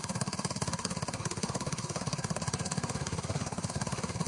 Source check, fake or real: fake